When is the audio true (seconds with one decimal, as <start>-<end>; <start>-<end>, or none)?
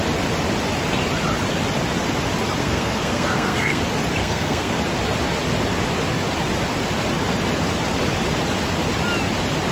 0.0-2.6; 3.8-4.2; 4.8-9.7